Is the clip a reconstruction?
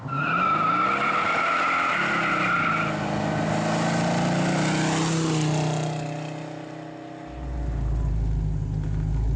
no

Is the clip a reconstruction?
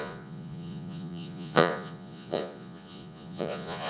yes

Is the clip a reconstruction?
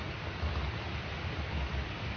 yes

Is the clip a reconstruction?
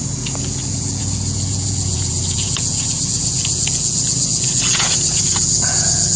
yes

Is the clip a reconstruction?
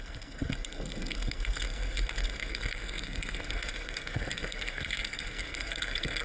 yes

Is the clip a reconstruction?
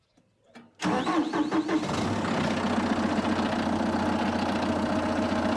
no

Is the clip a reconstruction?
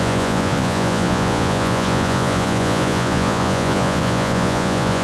yes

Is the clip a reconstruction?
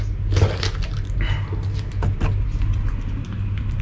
no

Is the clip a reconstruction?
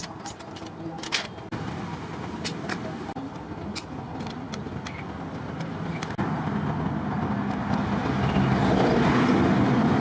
no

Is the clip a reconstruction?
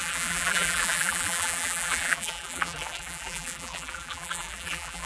yes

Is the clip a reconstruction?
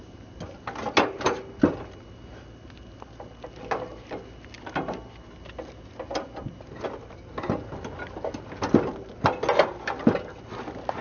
no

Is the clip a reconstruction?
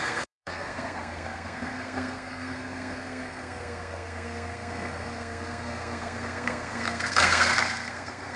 yes